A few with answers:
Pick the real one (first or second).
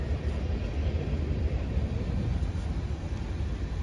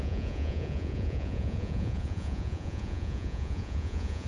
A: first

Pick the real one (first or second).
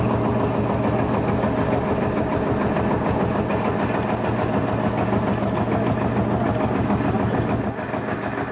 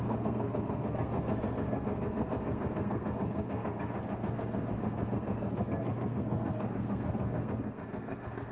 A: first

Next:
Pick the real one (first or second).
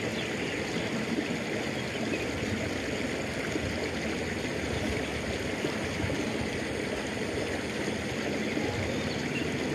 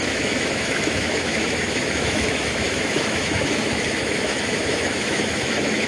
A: first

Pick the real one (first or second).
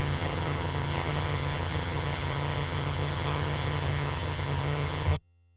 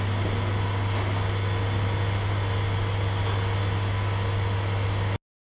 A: second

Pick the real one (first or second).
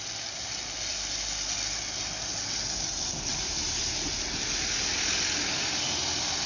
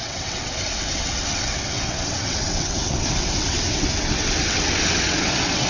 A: first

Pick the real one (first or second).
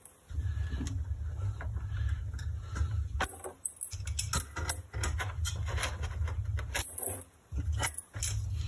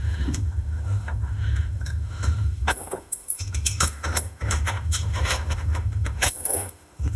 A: first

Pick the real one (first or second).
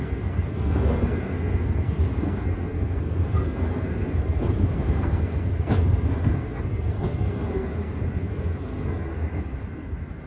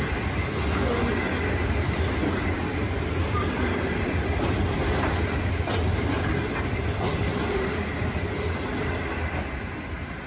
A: second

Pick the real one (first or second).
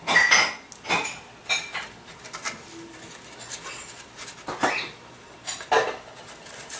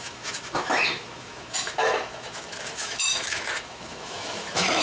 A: first